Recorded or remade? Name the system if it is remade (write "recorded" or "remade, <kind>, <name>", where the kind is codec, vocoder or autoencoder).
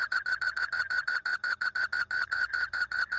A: remade, vocoder, Vocos